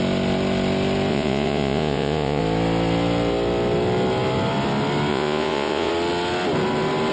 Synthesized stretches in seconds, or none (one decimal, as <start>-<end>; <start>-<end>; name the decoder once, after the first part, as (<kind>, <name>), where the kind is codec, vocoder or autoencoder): 1.1-2.4 (vocoder, Vocos); 5.1-5.9